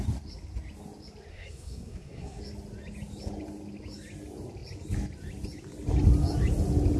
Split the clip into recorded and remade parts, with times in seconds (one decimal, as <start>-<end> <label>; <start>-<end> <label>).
0.0-1.3 recorded; 1.3-2.4 remade; 2.4-7.0 recorded